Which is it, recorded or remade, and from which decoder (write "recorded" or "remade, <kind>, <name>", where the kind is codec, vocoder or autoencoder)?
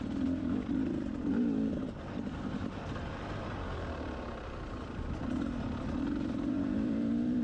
remade, vocoder, BigVGAN v2